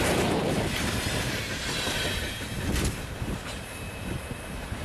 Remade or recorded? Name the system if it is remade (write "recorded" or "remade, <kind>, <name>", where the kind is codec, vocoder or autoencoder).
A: remade, vocoder, BigVGAN v2